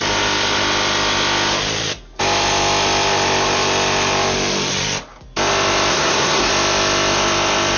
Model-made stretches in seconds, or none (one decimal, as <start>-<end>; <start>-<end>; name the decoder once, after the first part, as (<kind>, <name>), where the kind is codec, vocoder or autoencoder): 5.9-6.5 (codec, SNAC)